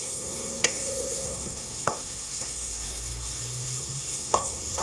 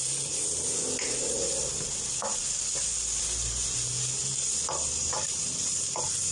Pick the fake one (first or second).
first